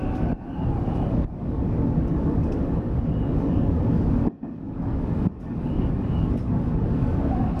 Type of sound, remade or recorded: remade